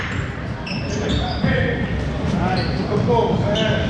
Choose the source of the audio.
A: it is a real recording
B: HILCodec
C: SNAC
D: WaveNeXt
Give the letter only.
A